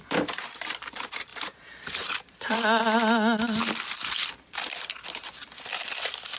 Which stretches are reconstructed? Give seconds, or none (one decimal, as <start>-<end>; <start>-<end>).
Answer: 0.0-6.4